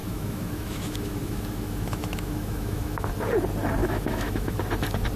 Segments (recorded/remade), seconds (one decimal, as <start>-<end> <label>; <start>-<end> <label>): 0.0-3.1 remade; 3.1-3.8 recorded; 3.8-4.6 remade; 4.6-5.2 recorded